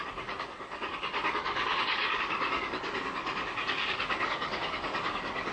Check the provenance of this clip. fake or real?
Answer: fake